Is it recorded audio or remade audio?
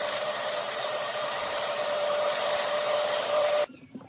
remade